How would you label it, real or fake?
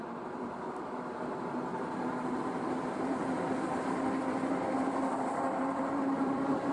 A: fake